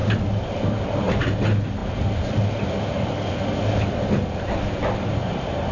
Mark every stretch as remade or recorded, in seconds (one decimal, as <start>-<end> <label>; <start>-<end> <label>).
0.0-5.7 recorded